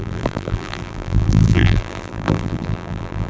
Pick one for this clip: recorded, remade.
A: remade